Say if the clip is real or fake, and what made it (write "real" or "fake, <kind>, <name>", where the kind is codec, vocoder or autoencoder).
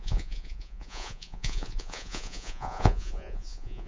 fake, vocoder, Vocos